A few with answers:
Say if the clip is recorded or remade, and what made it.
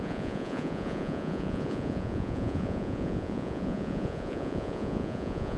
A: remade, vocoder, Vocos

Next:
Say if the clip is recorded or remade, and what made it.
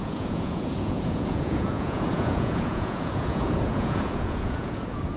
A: remade, vocoder, Vocos